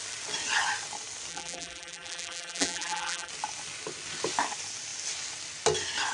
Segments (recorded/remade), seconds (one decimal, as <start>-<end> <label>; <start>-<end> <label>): 0.0-1.3 recorded; 1.3-3.3 remade; 3.3-6.1 recorded

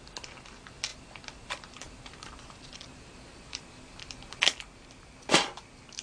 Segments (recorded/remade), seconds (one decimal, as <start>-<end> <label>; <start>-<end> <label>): 0.0-0.9 recorded; 0.9-4.1 remade; 4.1-6.0 recorded

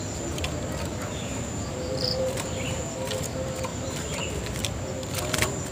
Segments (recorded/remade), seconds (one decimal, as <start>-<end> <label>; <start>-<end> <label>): 0.0-0.9 recorded; 0.9-2.8 remade; 2.8-3.7 recorded; 3.7-4.3 remade; 4.3-5.7 recorded

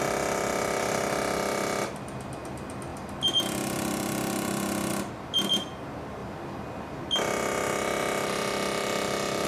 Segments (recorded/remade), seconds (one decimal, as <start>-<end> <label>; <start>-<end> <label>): 0.0-9.5 recorded

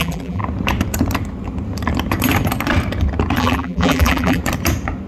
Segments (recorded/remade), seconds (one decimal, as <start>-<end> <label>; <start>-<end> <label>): 0.0-0.4 remade; 0.4-3.4 recorded; 3.4-4.4 remade; 4.4-5.1 recorded

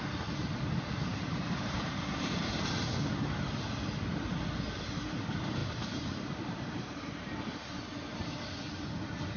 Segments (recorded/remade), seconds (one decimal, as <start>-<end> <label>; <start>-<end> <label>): 0.0-1.1 recorded; 1.1-2.4 remade; 2.4-5.6 recorded; 5.6-7.5 remade; 7.5-9.4 recorded

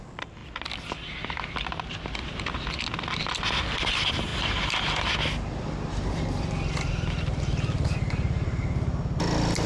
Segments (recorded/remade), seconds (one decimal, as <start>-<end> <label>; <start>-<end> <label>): 0.0-9.7 recorded

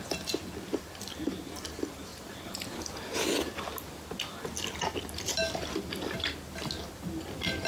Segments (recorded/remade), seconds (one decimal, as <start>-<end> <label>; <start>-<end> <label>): 0.0-2.1 recorded; 2.1-2.9 remade; 2.9-7.7 recorded